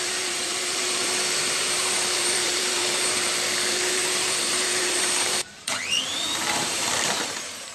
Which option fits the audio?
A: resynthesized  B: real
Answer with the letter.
A